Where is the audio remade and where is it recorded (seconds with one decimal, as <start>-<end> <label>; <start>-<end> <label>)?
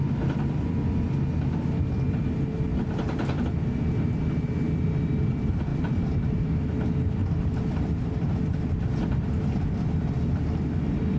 0.0-2.7 recorded; 2.7-3.4 remade; 3.4-7.2 recorded; 7.2-8.3 remade; 8.3-11.2 recorded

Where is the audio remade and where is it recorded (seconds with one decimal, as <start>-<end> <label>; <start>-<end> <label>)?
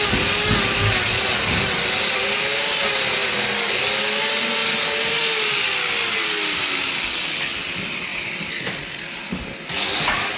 0.0-8.1 recorded; 8.1-8.7 remade; 8.7-10.4 recorded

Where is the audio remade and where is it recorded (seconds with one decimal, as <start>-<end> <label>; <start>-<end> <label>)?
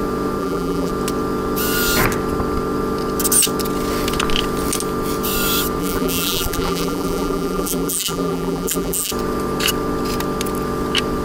0.0-0.4 recorded; 0.4-0.9 remade; 0.9-5.8 recorded; 5.8-9.1 remade; 9.1-11.2 recorded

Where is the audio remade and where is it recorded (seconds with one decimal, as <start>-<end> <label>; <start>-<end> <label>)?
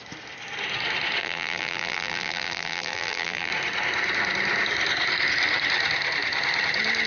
0.0-1.2 recorded; 1.2-3.5 remade; 3.5-7.1 recorded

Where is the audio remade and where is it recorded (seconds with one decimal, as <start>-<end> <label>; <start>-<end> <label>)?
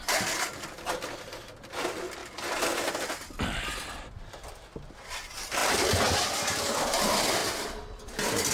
0.0-8.5 recorded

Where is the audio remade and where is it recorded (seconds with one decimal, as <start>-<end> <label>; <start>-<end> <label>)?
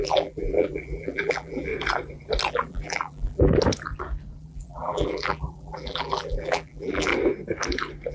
0.0-1.7 remade; 1.7-2.5 recorded; 2.5-3.5 remade; 3.5-4.4 recorded; 4.4-7.1 remade; 7.1-8.1 recorded